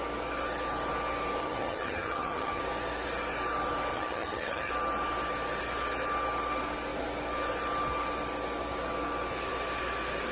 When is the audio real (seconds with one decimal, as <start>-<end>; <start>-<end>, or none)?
0.0-1.4; 2.6-3.9; 4.7-10.3